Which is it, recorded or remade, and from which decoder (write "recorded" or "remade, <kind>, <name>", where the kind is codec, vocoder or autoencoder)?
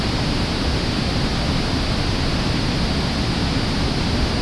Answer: recorded